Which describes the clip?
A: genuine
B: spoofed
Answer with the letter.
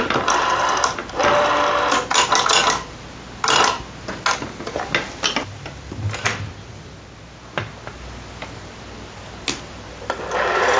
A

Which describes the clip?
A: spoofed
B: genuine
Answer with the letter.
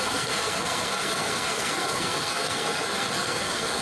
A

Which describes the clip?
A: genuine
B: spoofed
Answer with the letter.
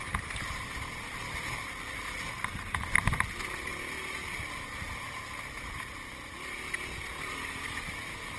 A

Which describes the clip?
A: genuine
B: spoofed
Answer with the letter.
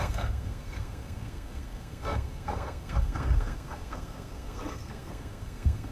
B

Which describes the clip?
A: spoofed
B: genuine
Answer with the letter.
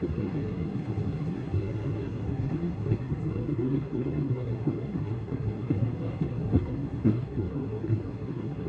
A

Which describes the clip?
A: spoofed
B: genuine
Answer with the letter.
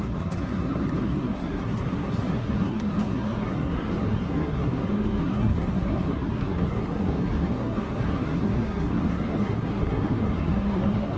A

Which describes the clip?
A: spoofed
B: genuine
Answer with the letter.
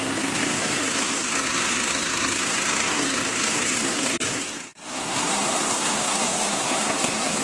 A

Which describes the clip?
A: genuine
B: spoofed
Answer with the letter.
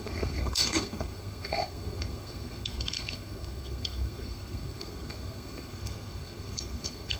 B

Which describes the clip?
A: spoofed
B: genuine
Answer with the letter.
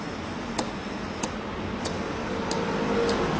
B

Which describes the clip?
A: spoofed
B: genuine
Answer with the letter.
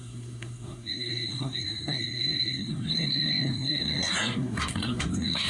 A